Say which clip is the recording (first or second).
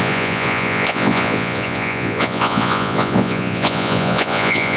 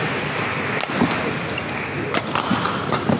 second